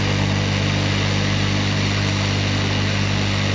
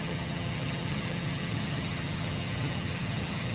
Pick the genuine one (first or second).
first